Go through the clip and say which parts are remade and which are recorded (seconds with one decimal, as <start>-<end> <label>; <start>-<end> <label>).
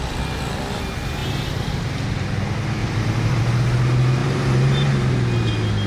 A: 0.0-1.2 recorded; 1.2-1.7 remade; 1.7-2.8 recorded; 2.8-3.4 remade; 3.4-4.2 recorded; 4.2-4.9 remade; 4.9-5.9 recorded